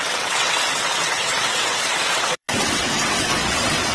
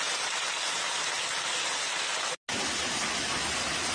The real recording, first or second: second